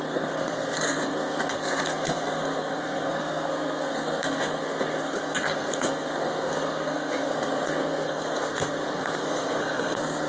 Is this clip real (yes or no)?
no